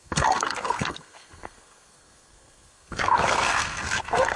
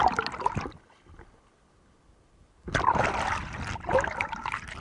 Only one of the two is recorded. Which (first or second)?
second